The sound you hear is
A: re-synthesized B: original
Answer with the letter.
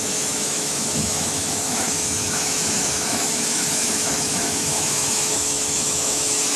A